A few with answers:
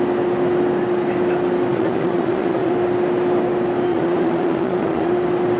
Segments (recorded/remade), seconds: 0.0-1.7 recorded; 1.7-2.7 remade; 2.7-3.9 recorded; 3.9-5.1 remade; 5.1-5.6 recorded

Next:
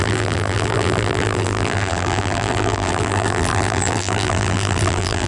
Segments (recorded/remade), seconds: 0.0-5.3 remade